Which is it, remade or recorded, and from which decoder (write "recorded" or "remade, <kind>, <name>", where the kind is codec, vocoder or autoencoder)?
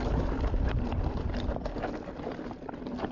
remade, vocoder, BigVGAN v2